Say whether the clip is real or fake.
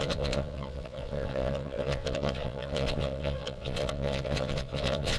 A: fake